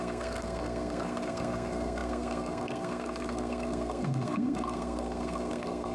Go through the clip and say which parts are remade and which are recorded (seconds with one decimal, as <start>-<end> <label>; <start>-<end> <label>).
0.0-5.9 remade